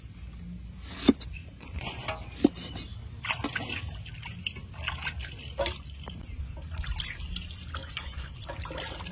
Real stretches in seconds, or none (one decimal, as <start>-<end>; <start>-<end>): 0.0-1.4; 2.0-7.8; 8.4-9.1